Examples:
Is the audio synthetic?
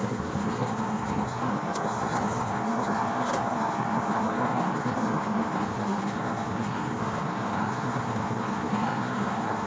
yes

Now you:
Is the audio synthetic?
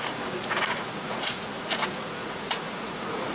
yes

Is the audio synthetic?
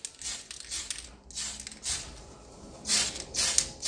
no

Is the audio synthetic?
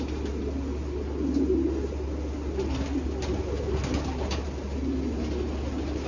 no